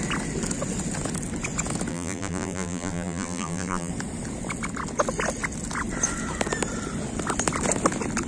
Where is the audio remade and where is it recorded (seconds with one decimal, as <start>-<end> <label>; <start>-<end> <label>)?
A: 0.0-1.9 recorded; 1.9-3.9 remade; 3.9-8.3 recorded